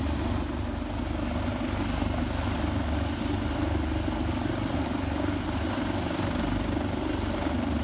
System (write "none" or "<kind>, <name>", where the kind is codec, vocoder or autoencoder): none